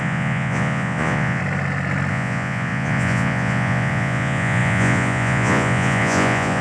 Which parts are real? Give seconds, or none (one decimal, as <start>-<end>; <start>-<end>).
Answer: 1.4-2.1